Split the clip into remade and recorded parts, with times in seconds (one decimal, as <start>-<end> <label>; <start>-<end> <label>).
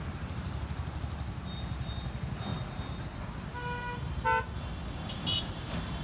0.0-6.0 recorded